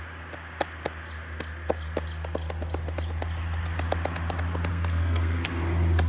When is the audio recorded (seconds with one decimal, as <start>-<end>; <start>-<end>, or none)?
0.0-4.7; 5.6-6.1